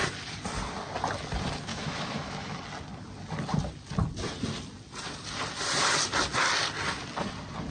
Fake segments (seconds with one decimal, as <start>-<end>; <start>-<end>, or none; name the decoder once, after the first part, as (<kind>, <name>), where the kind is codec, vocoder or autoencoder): 1.7-2.6 (autoencoder, DAC-VAE)